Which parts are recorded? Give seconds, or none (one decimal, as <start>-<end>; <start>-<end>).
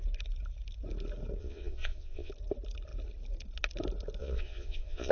0.0-1.4; 2.3-4.2